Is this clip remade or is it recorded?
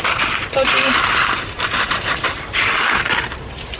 remade